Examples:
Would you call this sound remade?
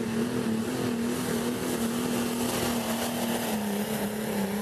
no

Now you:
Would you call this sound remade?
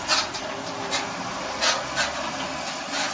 no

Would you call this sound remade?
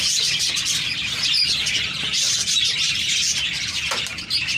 no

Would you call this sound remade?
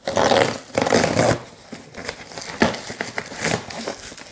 no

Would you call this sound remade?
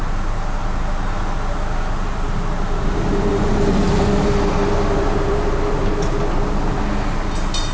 no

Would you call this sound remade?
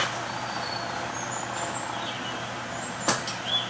no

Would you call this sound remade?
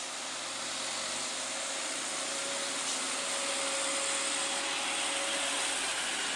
no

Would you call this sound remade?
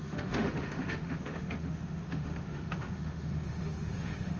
yes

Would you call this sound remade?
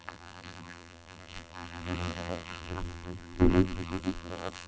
yes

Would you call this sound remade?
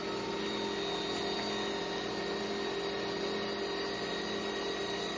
no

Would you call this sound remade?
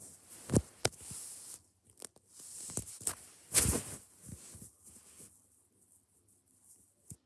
no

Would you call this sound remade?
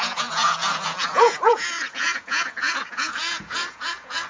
yes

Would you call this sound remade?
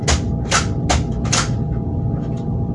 no